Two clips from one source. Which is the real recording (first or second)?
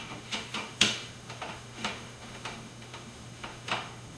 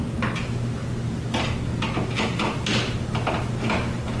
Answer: second